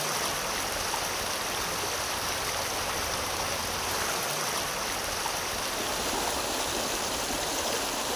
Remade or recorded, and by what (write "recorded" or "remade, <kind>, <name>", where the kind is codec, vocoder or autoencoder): recorded